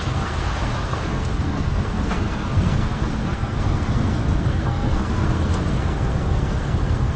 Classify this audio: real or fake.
fake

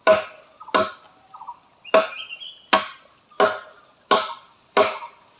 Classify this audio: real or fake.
real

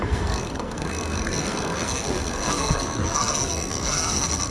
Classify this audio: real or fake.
fake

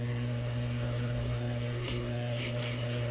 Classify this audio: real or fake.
fake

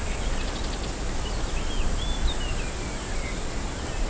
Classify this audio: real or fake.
real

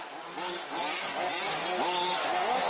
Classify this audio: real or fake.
real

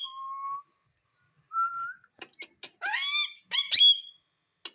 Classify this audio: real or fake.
real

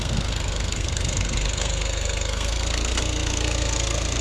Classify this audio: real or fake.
fake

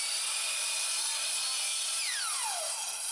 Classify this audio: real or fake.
real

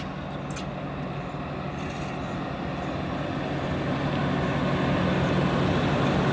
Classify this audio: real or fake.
real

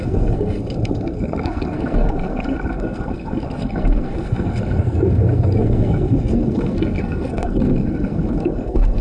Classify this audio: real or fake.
fake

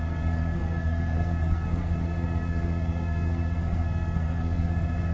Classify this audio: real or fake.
fake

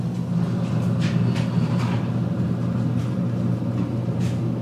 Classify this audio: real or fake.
real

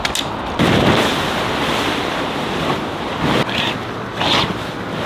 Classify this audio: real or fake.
real